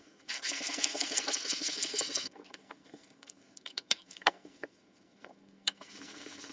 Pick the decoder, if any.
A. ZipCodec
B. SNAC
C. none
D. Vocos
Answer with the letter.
B